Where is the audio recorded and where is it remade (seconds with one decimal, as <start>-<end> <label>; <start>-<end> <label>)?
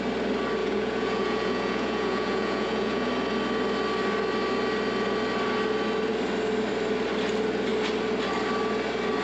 0.0-0.6 recorded; 0.6-3.1 remade; 3.1-9.2 recorded